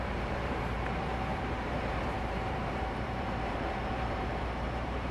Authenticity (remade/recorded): remade